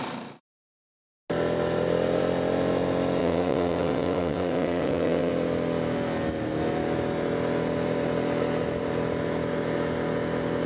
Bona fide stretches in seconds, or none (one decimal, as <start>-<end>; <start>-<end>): 0.0-3.2; 5.3-10.7